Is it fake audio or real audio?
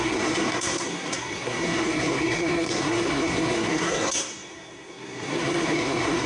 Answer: fake